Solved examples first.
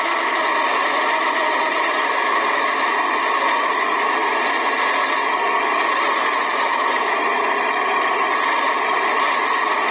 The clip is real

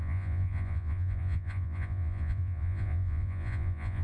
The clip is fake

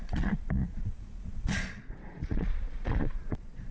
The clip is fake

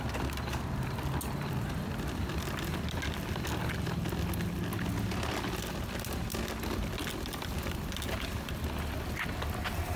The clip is real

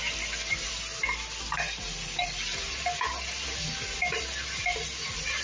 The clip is real